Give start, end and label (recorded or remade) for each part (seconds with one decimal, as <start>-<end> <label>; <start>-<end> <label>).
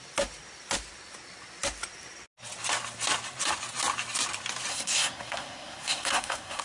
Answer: 0.0-4.7 recorded; 4.7-6.6 remade